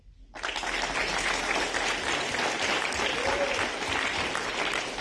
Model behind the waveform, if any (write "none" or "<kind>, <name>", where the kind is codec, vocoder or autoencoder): none